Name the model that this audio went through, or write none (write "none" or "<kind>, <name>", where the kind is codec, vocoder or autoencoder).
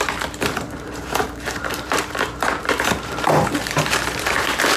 vocoder, BigVGAN v2